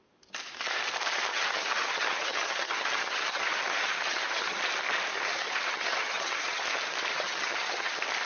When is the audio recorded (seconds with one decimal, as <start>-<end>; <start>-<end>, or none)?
0.0-1.3; 4.6-5.1; 6.6-7.1; 7.9-8.3